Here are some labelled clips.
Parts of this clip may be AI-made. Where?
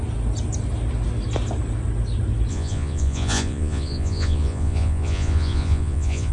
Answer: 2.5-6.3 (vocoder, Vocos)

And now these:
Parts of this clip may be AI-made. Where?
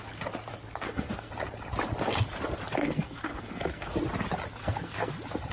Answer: 0.5-1.3 (codec, SNAC); 2.8-3.9; 4.6-5.1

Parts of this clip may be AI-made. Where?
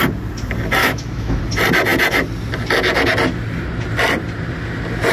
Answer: 0.8-1.4 (autoencoder, DAC-VAE)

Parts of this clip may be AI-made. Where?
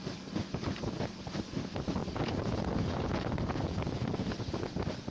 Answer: 2.0-4.2 (vocoder, Vocos)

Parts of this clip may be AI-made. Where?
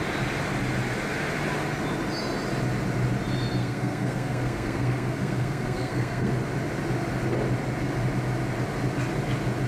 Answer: 3.6-6.3 (codec, SNAC)